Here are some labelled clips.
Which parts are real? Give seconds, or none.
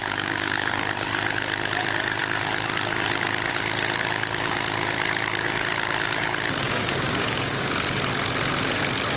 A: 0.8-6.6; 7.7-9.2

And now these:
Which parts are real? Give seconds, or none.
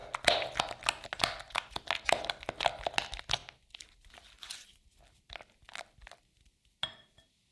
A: 0.0-7.5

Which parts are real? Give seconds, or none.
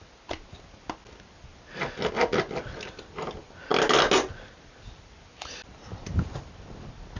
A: 0.0-7.2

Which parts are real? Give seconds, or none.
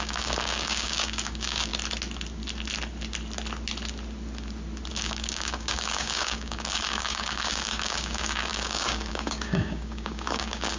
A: 1.7-4.9